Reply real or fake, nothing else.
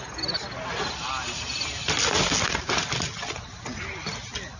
real